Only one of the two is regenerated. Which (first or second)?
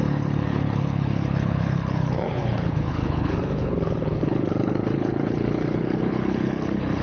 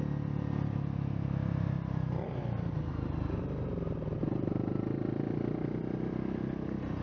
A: first